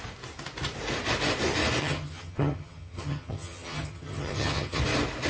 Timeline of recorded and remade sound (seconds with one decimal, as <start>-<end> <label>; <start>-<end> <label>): 0.0-1.8 recorded; 1.8-4.8 remade; 4.8-5.3 recorded